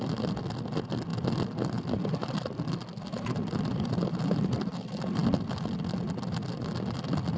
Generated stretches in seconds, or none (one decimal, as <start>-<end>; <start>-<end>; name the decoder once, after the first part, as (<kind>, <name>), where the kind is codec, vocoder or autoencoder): none